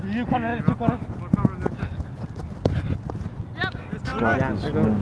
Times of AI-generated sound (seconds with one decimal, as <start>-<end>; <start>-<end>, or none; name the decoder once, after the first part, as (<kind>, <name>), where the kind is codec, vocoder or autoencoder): none